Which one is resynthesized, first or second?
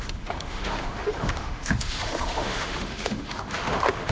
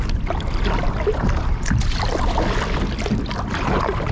first